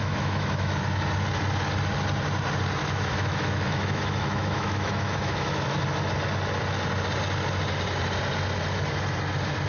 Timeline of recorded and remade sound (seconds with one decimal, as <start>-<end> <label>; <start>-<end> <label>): 0.0-0.7 remade; 0.7-2.8 recorded; 2.8-5.8 remade; 5.8-9.7 recorded